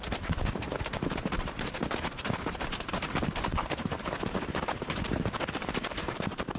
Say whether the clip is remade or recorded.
remade